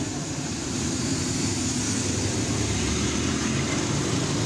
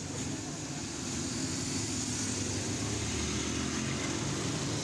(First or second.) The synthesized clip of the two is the first